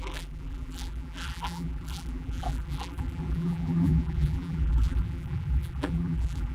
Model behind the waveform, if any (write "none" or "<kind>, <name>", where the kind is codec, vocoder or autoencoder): vocoder, BigVGAN v2